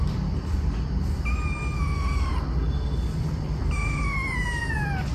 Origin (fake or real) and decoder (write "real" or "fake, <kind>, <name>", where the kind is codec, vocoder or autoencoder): real